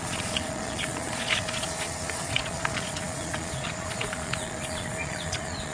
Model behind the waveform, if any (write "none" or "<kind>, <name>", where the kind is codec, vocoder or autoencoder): vocoder, Vocos